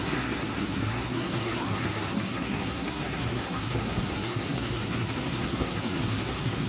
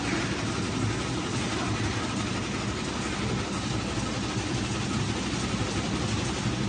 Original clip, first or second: second